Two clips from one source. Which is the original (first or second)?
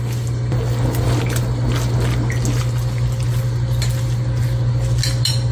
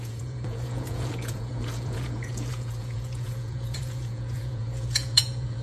first